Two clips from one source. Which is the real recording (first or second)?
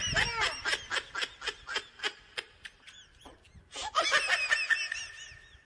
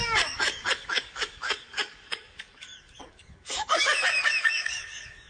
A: first